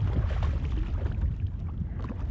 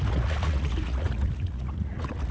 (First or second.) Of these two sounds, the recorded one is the first